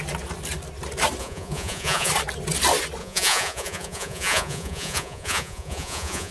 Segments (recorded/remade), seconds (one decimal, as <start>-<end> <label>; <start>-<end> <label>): 0.0-1.2 recorded; 1.2-2.1 remade; 2.1-3.0 recorded; 3.0-6.3 remade

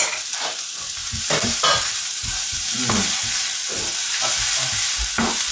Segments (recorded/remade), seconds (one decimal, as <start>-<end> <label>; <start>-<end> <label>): 0.0-1.0 recorded; 1.0-2.6 remade; 2.6-5.5 recorded

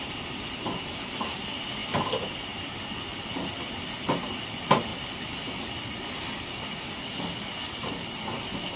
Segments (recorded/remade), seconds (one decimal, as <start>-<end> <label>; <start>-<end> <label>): 0.0-8.8 recorded

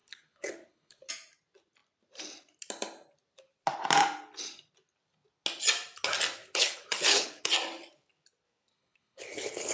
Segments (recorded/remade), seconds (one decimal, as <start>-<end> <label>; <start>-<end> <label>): 0.0-1.1 remade; 1.1-6.4 recorded; 6.4-7.5 remade; 7.5-8.7 recorded; 8.7-9.7 remade